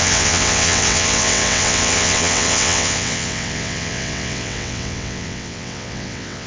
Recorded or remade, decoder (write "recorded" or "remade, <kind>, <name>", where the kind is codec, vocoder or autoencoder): remade, vocoder, WaveNeXt